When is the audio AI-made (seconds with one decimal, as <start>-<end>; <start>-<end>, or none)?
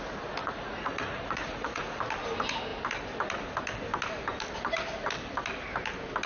0.4-2.0